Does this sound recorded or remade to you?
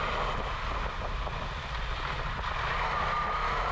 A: recorded